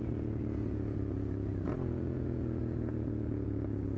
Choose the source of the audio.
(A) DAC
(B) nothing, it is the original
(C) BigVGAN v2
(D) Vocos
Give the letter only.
D